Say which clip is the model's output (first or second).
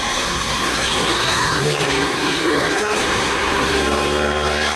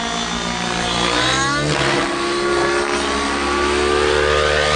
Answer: first